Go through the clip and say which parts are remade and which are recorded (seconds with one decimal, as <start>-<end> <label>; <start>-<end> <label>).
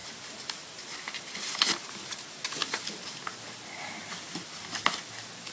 0.0-5.5 recorded